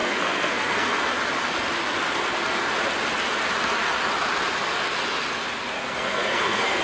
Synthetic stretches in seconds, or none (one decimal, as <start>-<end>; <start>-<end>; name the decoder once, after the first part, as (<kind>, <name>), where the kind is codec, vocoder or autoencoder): 0.0-1.0 (codec, SNAC); 5.8-6.8